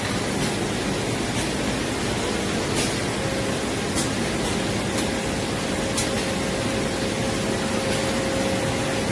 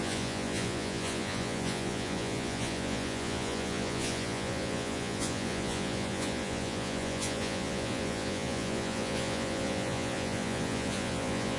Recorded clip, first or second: first